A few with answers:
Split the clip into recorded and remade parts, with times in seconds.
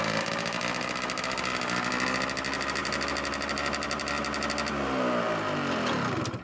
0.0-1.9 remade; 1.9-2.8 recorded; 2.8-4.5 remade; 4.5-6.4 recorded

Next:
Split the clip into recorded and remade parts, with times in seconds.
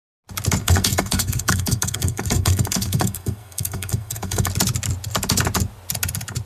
0.0-0.6 recorded; 0.6-4.5 remade; 4.5-6.5 recorded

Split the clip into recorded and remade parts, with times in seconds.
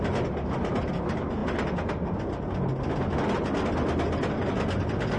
0.0-5.2 recorded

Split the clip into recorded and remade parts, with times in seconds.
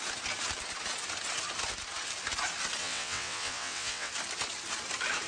0.0-2.8 recorded; 2.8-4.1 remade; 4.1-5.3 recorded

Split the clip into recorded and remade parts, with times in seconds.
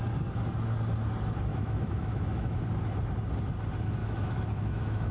0.0-1.5 recorded; 1.5-2.6 remade; 2.6-4.0 recorded; 4.0-5.1 remade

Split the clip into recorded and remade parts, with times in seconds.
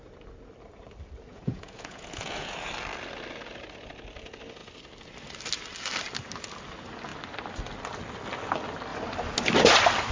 0.0-1.3 recorded; 1.3-2.7 remade; 2.7-10.1 recorded